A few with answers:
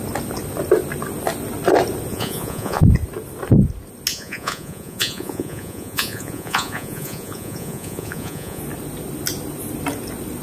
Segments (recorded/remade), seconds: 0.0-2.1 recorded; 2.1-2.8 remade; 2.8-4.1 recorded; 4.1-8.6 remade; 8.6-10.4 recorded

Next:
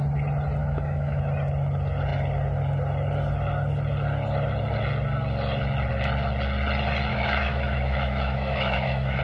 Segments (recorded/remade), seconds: 0.0-0.6 recorded; 0.6-1.2 remade; 1.2-7.1 recorded; 7.1-9.2 remade

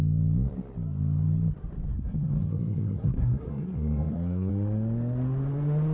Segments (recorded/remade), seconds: 0.0-1.9 recorded; 1.9-4.5 remade; 4.5-5.9 recorded

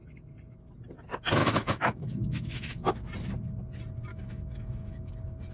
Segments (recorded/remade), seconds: 0.0-1.4 recorded; 1.4-2.9 remade; 2.9-4.1 recorded; 4.1-5.1 remade; 5.1-5.5 recorded